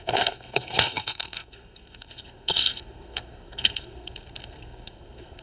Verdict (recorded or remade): remade